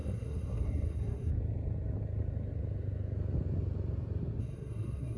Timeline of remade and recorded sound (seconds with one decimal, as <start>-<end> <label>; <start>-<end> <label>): 0.0-1.3 remade; 1.3-4.4 recorded; 4.4-5.2 remade